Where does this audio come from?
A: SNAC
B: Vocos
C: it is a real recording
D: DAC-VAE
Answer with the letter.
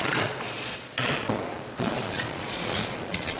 B